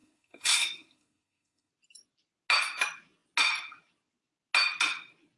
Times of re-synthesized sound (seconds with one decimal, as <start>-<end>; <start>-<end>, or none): 0.0-1.7